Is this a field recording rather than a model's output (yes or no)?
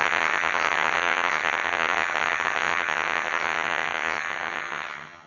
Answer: no